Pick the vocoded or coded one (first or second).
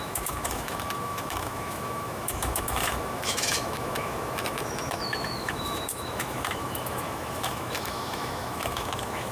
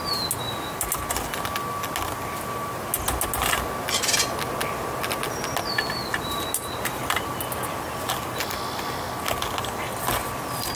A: first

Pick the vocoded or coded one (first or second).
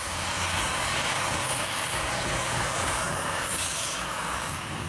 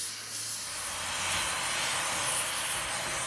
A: first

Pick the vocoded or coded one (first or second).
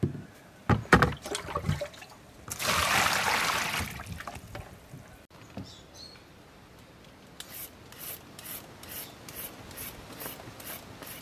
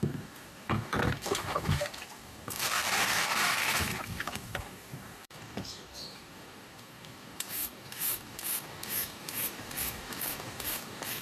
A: second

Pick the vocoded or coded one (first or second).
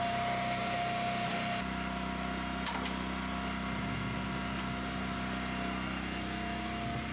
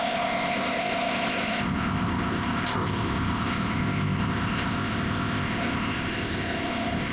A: second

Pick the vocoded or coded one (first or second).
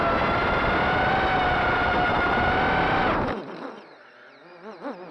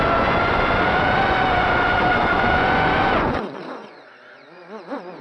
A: second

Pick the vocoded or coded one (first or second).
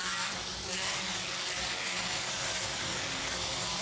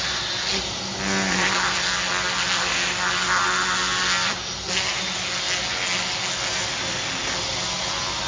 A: first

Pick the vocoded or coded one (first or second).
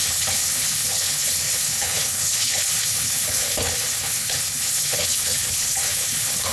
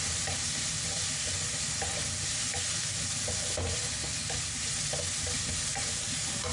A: first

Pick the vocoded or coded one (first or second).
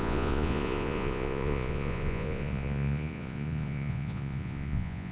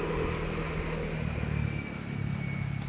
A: first